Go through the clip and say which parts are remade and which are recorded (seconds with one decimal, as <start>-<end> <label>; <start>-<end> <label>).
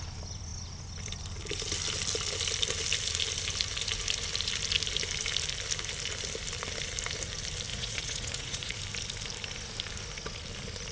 0.0-7.7 recorded; 7.7-8.8 remade; 8.8-10.9 recorded